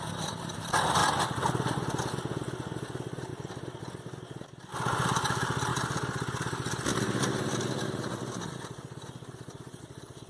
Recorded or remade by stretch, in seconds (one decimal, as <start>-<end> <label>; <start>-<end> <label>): 0.0-10.3 recorded